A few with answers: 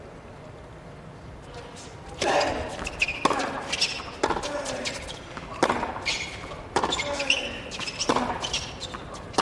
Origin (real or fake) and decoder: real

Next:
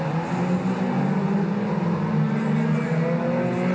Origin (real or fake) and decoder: real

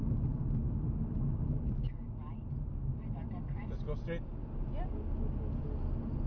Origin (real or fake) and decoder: real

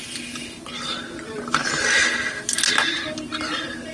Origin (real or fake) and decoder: real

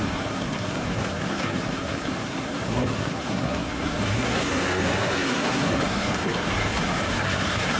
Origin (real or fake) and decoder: fake, codec, SNAC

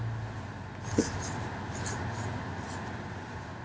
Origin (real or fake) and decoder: real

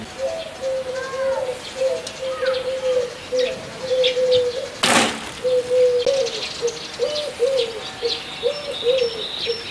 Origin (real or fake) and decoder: real